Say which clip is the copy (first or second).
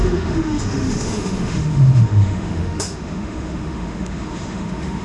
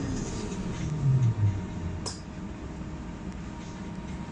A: first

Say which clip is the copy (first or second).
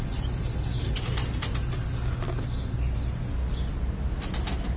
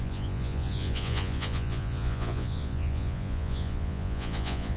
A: second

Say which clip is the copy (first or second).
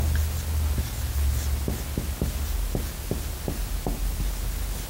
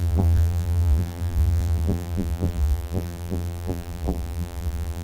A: second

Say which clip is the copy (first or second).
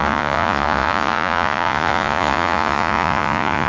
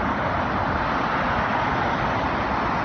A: first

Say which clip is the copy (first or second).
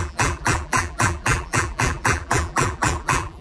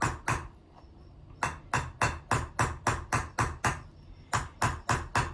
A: first